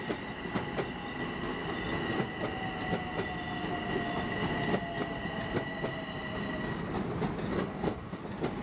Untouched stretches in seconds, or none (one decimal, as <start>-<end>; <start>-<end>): 0.0-7.5; 8.2-8.6